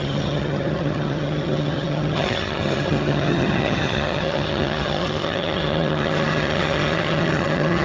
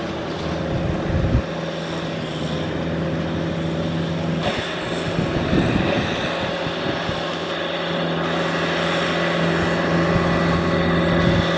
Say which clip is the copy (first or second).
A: first